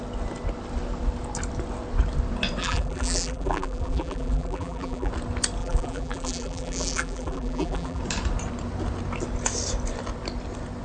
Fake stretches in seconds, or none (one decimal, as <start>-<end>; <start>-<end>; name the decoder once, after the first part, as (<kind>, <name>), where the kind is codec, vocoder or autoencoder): 2.6-5.1 (vocoder, BigVGAN v2); 5.6-8.0